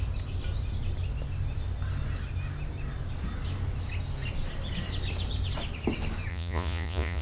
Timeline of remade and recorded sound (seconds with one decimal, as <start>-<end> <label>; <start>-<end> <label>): 0.0-6.3 recorded; 6.3-7.2 remade